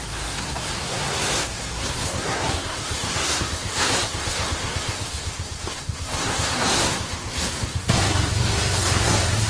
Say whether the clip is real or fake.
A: fake